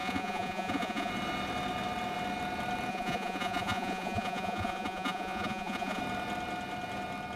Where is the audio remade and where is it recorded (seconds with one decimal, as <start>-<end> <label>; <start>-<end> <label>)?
0.0-1.1 remade; 1.1-2.9 recorded; 2.9-6.0 remade; 6.0-7.4 recorded